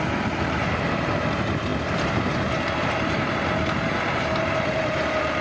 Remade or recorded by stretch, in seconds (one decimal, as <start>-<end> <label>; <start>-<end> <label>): 0.0-5.4 remade